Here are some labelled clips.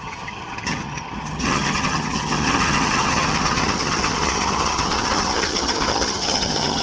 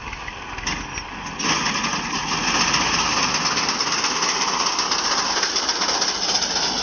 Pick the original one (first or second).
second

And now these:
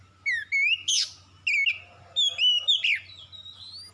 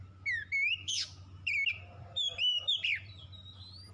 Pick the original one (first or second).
first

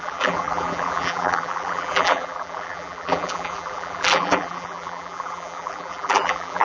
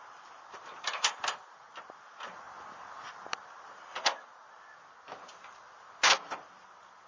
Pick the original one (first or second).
second